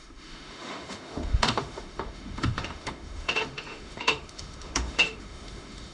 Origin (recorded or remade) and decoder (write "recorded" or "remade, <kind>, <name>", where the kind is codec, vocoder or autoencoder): remade, autoencoder, DAC-VAE